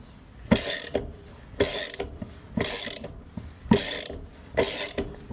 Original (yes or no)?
yes